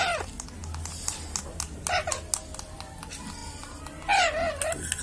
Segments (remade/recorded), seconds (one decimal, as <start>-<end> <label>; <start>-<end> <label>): 0.0-5.0 recorded